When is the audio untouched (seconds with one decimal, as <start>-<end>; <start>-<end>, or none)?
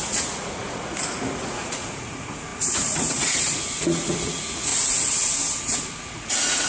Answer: 4.7-5.6